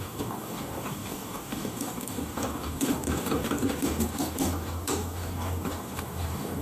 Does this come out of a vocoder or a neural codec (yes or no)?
yes